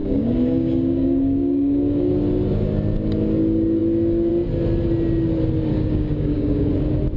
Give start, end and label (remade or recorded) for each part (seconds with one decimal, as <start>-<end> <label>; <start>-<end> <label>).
0.0-2.1 remade; 2.1-5.7 recorded; 5.7-6.7 remade; 6.7-7.2 recorded